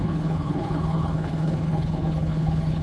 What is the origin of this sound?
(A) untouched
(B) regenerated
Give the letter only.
B